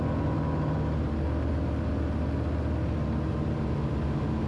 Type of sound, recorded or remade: recorded